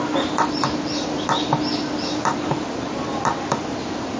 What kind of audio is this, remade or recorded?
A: recorded